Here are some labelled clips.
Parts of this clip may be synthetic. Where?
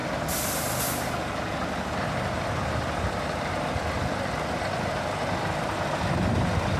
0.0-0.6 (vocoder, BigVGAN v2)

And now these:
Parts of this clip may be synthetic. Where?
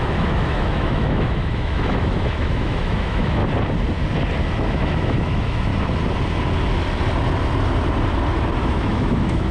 0.0-3.4 (autoencoder, DAC-VAE); 4.7-5.7; 8.6-9.5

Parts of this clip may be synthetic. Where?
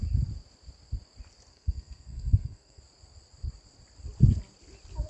1.5-2.8 (codec, SNAC)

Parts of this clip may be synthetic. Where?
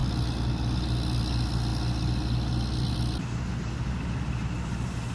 none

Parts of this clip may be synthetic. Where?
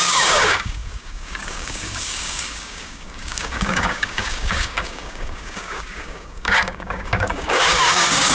0.0-8.3 (codec, DAC)